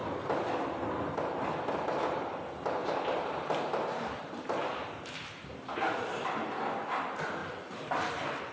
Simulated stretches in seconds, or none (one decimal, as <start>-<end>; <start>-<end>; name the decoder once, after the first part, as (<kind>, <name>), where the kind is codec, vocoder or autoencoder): 2.8-4.6 (vocoder, BigVGAN v2); 7.4-8.5